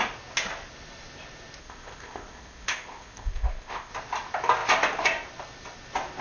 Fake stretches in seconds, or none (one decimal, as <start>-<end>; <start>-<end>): 1.6-3.9